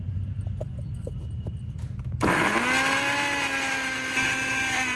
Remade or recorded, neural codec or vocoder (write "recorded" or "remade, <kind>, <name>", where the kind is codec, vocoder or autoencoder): recorded